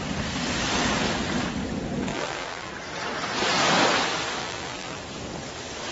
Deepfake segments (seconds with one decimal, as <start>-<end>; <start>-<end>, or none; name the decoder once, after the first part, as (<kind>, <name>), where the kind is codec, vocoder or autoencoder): 2.1-2.7 (vocoder, BigVGAN v2); 4.4-5.0